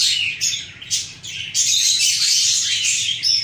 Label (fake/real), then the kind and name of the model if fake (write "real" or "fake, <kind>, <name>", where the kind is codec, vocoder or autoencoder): real